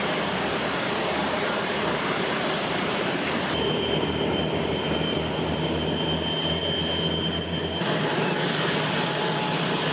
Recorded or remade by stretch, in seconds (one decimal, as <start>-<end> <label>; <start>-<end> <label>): 0.0-1.2 recorded; 1.2-4.7 remade; 4.7-9.9 recorded